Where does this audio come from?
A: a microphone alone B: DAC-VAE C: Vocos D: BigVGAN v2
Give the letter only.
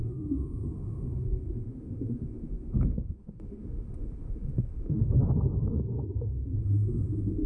B